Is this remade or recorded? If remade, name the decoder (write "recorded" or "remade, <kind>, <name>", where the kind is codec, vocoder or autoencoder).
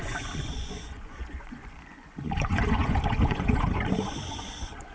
remade, vocoder, Vocos